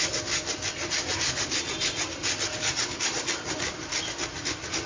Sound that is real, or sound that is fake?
real